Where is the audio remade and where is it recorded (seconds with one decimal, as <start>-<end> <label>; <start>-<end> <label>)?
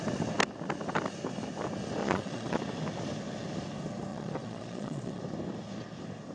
0.0-2.0 recorded; 2.0-2.6 remade; 2.6-4.1 recorded; 4.1-5.2 remade; 5.2-6.3 recorded